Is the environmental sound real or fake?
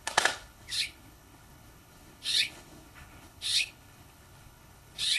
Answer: fake